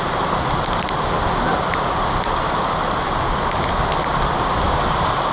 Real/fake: real